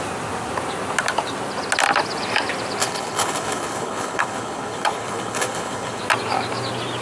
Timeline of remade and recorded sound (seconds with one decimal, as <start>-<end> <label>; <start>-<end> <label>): 0.0-2.8 recorded; 2.8-6.0 remade; 6.0-7.0 recorded